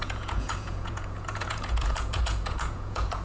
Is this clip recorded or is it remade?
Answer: remade